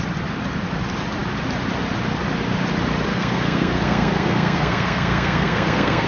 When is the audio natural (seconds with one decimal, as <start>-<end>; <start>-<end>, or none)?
0.0-3.1